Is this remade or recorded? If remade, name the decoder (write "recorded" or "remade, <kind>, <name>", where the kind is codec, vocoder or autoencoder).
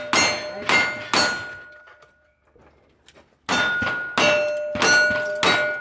recorded